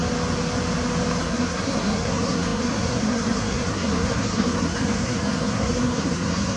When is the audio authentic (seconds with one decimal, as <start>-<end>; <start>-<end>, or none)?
0.0-1.2